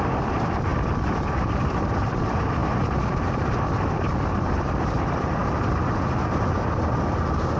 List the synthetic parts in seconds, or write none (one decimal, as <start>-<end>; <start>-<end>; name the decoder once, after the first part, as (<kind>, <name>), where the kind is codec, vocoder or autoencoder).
0.0-2.6 (vocoder, BigVGAN v2); 4.5-5.4; 6.8-7.6